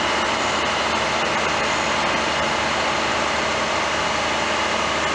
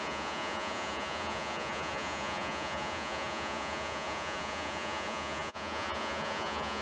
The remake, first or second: second